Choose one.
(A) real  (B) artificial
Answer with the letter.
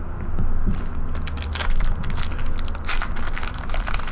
A